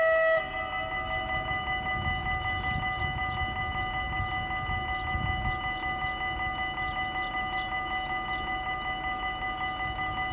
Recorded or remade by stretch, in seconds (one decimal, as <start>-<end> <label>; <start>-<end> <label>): 0.0-10.3 recorded